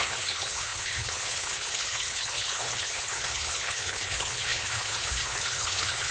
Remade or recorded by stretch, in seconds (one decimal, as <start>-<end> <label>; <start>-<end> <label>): 0.0-6.1 remade

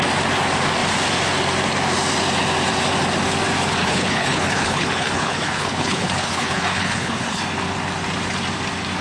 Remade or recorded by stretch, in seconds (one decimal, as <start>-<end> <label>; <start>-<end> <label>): 0.0-3.8 recorded; 3.8-7.4 remade; 7.4-9.0 recorded

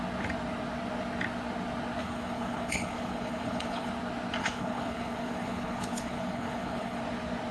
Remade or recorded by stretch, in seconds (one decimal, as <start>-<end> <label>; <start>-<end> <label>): 0.0-2.0 recorded; 2.0-3.9 remade; 3.9-4.4 recorded; 4.4-7.0 remade; 7.0-7.5 recorded

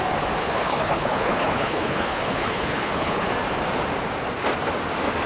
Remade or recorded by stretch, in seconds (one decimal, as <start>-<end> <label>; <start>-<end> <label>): 0.0-0.4 recorded; 0.4-3.3 remade; 3.3-5.3 recorded

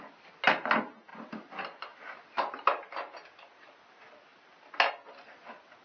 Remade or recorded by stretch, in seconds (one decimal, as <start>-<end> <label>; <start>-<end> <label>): 0.0-5.8 recorded

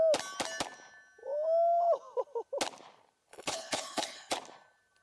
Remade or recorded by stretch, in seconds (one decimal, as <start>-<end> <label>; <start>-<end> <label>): 0.0-3.3 recorded; 3.3-4.3 remade; 4.3-5.0 recorded